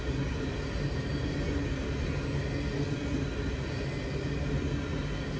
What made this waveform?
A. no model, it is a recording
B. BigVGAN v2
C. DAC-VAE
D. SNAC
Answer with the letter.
A